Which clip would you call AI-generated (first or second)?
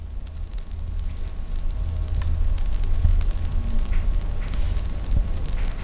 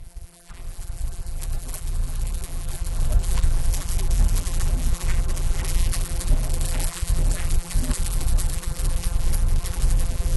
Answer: second